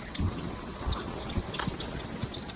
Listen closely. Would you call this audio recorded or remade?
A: remade